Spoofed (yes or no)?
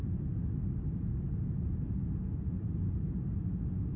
no